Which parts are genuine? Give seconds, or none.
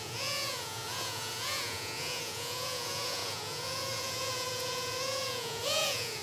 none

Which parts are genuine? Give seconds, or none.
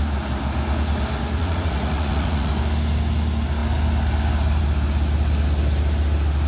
0.0-1.4; 2.5-6.5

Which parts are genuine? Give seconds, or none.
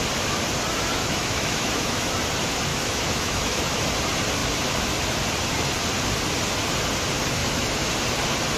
0.0-1.0; 2.1-2.7; 3.9-7.4; 7.9-8.6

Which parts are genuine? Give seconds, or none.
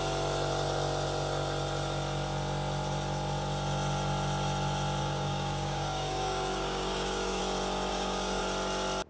0.0-5.0; 7.4-7.9; 8.4-9.1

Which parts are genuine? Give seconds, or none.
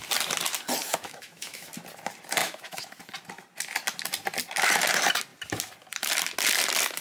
0.0-0.8; 1.7-2.4; 3.0-7.0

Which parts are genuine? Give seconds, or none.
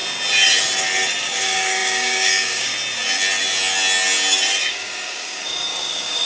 0.0-1.2; 2.7-4.7